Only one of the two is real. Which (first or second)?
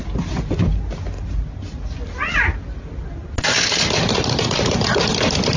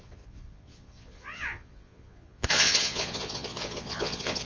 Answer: first